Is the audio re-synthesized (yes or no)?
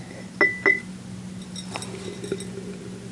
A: no